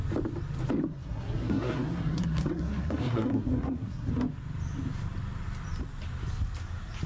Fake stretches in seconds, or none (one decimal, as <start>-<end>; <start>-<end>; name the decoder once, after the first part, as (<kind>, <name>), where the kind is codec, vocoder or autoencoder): 0.8-4.1 (codec, SNAC)